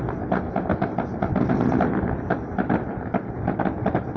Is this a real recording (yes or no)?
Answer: yes